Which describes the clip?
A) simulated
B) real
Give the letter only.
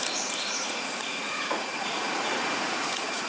A